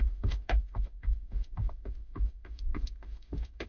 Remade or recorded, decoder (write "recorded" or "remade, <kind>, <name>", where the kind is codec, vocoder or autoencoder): remade, autoencoder, DAC-VAE